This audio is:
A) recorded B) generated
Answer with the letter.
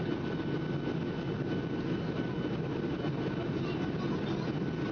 A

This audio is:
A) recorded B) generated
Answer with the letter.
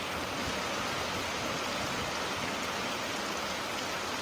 A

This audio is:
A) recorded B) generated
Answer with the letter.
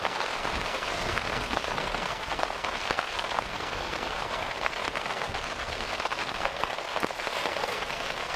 B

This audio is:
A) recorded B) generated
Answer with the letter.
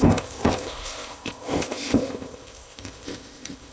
B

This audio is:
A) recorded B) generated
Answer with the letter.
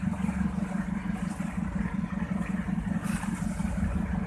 A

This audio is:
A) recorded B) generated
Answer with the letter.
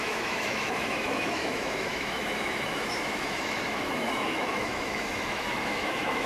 B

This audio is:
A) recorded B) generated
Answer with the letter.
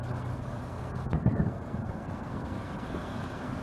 B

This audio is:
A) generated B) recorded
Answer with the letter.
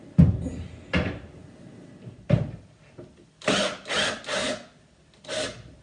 B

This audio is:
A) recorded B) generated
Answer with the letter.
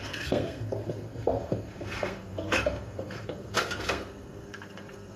B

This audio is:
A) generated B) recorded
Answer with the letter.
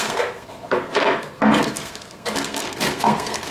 A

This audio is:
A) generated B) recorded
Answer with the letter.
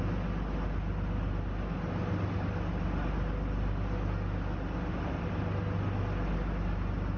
B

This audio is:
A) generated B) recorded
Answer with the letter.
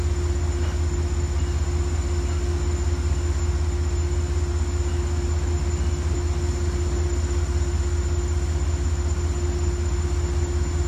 B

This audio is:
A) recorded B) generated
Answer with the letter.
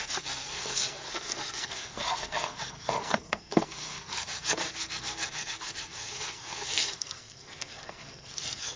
B